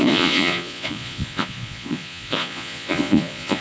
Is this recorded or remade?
remade